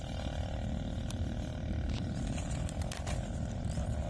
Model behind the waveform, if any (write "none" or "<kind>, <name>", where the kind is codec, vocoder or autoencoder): none